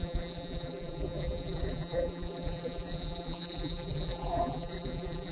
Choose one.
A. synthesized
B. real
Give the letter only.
A